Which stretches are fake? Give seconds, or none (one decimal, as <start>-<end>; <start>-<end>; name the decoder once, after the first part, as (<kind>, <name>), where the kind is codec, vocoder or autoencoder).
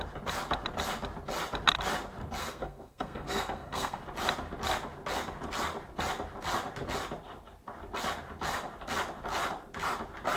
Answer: 2.4-4.0 (codec, SNAC)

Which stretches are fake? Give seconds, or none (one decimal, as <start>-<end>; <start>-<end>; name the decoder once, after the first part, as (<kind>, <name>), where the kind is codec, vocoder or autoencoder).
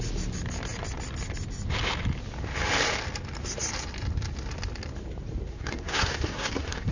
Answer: 5.5-6.9 (codec, SNAC)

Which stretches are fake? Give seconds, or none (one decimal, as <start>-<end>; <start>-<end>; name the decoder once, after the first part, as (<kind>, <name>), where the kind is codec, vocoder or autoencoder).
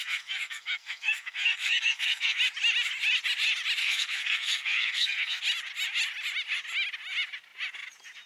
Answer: 0.0-2.4 (codec, SNAC); 3.8-5.4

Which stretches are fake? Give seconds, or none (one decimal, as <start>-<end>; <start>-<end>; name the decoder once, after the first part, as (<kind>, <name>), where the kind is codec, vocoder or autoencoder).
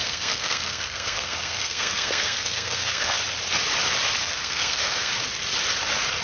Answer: 0.0-3.2 (codec, SNAC); 4.2-5.1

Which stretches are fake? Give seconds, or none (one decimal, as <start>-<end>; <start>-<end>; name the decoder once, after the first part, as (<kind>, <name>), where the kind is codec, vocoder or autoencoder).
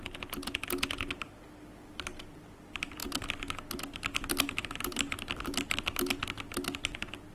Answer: none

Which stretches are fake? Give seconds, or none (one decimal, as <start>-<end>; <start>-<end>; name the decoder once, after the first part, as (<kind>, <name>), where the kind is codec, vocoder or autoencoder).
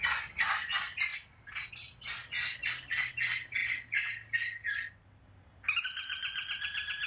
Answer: none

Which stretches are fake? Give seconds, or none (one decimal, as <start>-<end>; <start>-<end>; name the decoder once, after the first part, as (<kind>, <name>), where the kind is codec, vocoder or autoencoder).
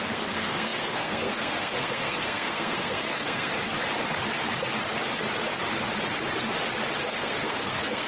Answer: 0.0-3.5 (codec, SNAC); 7.0-8.1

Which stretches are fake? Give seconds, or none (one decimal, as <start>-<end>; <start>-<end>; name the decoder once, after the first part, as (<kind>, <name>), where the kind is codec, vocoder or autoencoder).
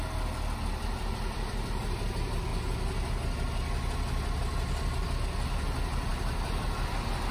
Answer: none